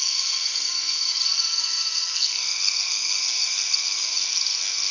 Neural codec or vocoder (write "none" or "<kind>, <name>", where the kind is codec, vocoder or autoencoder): codec, SNAC